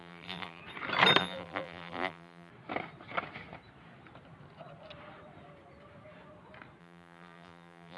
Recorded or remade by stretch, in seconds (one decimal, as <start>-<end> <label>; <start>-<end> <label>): 0.0-0.6 remade; 0.6-1.2 recorded; 1.2-2.5 remade; 2.5-6.8 recorded; 6.8-8.0 remade